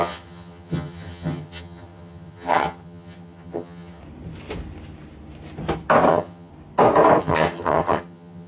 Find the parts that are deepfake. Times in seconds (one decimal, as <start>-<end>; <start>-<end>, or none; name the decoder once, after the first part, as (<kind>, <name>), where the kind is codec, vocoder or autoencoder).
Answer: 0.0-4.0 (vocoder, HiFi-GAN); 6.1-6.5; 7.2-8.5